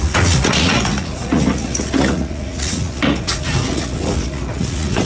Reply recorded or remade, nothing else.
remade